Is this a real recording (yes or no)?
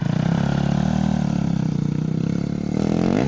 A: yes